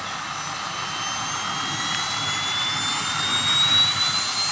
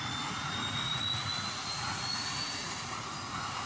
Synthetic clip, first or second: second